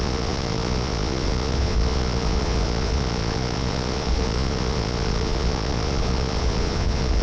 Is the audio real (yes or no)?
no